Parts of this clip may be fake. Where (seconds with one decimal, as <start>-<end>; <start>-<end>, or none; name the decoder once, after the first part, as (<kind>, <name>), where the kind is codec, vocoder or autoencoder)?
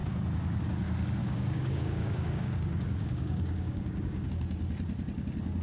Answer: 1.2-4.3 (codec, DAC)